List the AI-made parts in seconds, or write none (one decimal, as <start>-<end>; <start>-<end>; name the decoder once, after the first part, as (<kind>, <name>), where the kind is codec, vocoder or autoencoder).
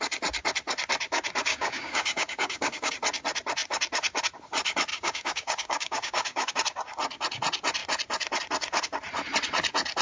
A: 1.5-2.9 (codec, DAC); 4.9-6.5